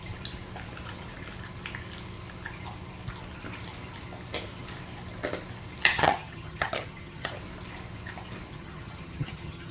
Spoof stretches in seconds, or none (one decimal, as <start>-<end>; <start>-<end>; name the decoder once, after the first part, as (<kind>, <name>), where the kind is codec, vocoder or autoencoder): 5.9-7.3 (vocoder, HiFi-GAN); 8.5-9.7